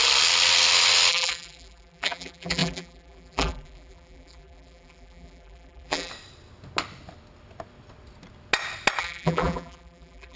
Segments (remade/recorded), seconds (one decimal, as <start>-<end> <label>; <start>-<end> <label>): 0.0-1.1 recorded; 1.1-6.1 remade; 6.1-9.0 recorded; 9.0-10.4 remade